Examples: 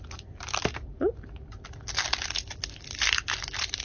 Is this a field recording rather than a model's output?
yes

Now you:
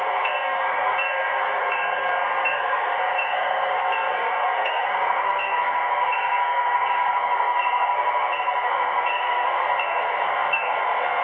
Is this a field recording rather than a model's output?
no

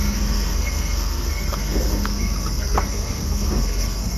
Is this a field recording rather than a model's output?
no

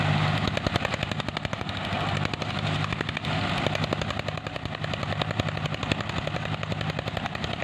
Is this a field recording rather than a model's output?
yes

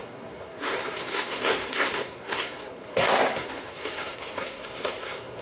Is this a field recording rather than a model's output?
no